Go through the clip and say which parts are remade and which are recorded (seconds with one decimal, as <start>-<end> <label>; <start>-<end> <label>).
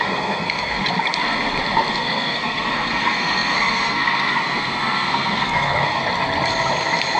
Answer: 0.0-0.8 remade; 0.8-1.9 recorded; 1.9-6.0 remade; 6.0-7.2 recorded